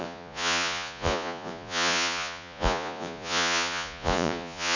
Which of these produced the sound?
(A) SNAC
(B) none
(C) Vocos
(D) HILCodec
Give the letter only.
C